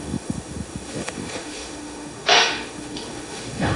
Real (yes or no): no